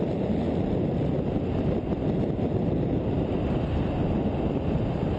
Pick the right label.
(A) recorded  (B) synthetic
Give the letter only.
A